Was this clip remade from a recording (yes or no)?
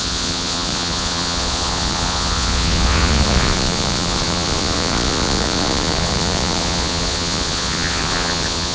yes